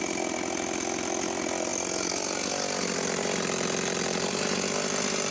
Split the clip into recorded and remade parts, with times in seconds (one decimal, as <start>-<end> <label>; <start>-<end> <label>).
0.0-5.3 recorded